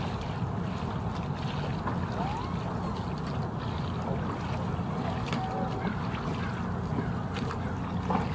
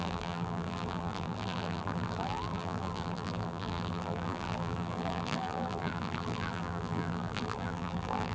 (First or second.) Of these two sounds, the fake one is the second